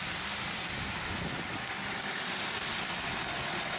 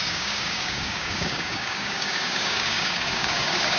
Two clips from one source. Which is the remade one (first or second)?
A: second